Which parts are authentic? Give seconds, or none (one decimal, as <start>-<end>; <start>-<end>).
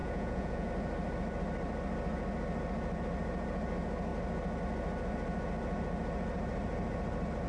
0.7-7.5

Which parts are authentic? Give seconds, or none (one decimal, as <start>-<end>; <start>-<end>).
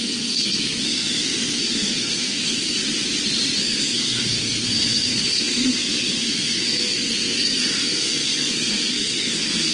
2.8-3.6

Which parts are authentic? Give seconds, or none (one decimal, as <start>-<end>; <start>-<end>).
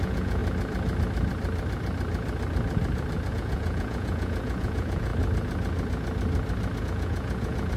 0.4-3.3; 5.1-6.8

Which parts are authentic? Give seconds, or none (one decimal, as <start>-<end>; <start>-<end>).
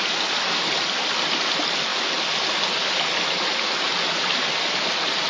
0.0-5.3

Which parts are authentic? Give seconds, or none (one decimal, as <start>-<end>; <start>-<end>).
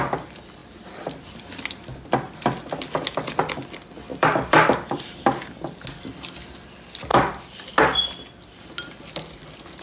0.0-4.1; 5.1-7.1; 7.7-9.8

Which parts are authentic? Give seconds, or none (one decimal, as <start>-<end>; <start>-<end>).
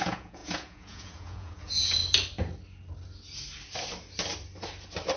2.0-5.2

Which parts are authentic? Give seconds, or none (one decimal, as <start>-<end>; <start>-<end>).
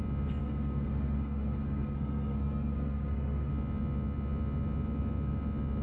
0.0-0.4; 3.5-5.8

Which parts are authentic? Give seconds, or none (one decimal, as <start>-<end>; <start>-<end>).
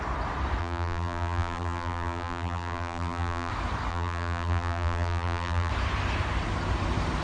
0.0-0.6; 3.5-3.9; 5.7-7.2